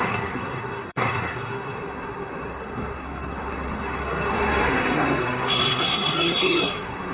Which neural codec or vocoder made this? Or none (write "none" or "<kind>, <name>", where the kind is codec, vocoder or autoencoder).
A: codec, SNAC